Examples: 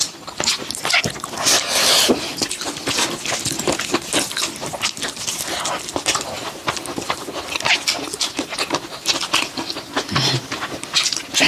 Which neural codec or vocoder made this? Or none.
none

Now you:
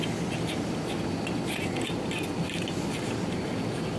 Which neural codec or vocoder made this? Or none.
none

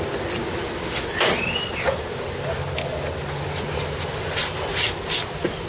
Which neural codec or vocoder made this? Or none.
none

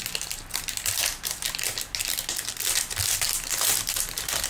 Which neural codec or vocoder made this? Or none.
none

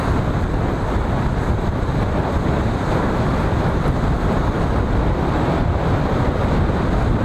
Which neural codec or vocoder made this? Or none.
none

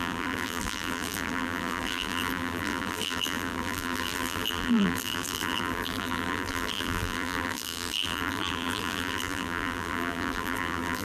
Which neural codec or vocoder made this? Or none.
vocoder, BigVGAN v2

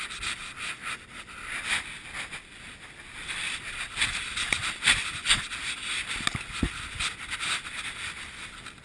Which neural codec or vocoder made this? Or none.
none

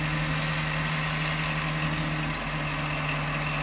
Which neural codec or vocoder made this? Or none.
none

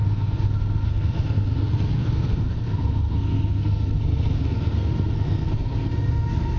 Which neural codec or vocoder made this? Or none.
codec, SNAC